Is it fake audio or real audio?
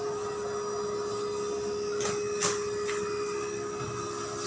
real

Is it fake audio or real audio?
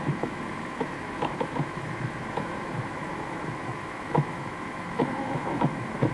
fake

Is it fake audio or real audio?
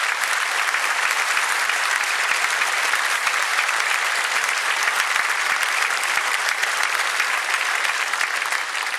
fake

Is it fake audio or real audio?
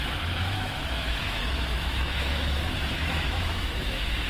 fake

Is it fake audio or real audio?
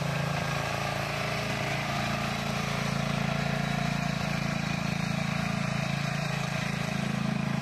fake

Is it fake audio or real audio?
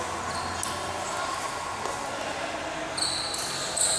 real